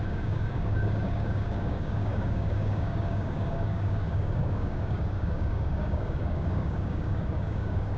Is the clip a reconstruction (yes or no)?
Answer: yes